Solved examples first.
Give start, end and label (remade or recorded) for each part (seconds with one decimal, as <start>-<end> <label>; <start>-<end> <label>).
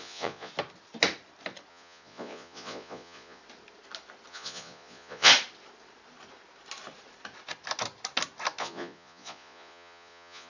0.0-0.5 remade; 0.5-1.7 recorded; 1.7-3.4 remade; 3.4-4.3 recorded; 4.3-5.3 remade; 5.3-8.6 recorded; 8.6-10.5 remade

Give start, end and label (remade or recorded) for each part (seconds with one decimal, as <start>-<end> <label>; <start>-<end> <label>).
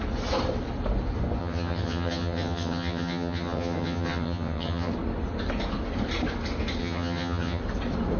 0.0-1.4 recorded; 1.4-4.9 remade; 4.9-6.8 recorded; 6.8-7.6 remade; 7.6-8.2 recorded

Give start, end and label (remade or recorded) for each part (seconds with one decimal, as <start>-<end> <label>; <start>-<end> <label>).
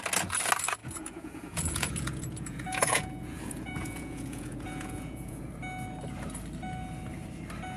0.0-0.8 recorded; 0.8-5.5 remade; 5.5-7.8 recorded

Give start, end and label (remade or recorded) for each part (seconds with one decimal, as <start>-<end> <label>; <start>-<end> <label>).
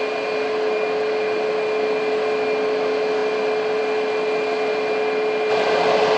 0.0-6.2 recorded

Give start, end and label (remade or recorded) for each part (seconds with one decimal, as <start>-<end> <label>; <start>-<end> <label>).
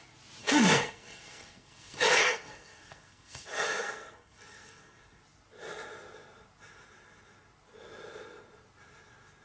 0.0-0.4 recorded; 0.4-5.2 remade; 5.2-9.4 recorded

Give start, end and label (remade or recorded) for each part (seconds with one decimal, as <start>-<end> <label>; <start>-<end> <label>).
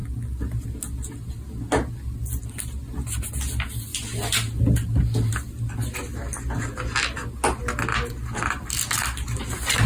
0.0-9.9 recorded